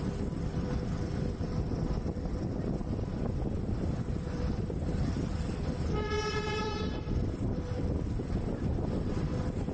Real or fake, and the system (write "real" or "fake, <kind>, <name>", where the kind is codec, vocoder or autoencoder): fake, vocoder, BigVGAN v2